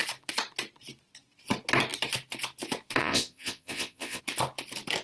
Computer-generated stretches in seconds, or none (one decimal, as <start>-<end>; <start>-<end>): 3.0-4.2